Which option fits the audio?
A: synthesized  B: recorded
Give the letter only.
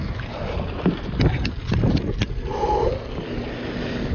B